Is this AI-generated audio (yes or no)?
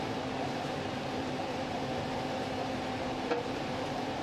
yes